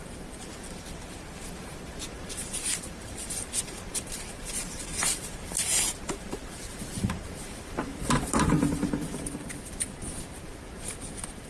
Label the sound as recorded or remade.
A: remade